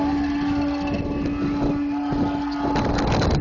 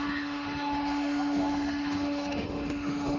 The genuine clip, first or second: first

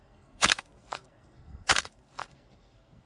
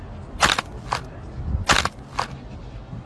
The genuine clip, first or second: second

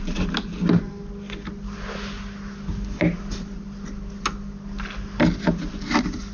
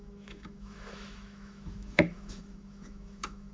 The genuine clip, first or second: first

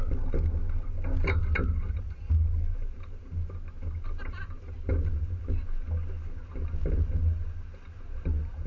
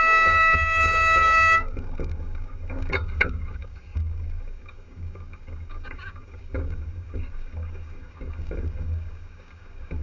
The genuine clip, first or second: first